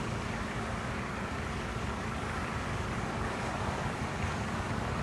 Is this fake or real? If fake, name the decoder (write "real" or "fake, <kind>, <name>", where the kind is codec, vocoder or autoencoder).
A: fake, codec, DAC